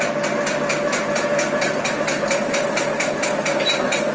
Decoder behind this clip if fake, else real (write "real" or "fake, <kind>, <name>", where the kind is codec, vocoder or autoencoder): real